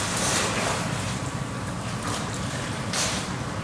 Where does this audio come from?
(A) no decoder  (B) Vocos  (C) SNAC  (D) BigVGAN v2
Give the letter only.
D